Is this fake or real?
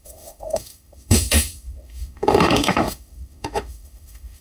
fake